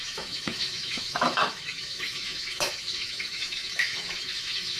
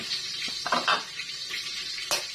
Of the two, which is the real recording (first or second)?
second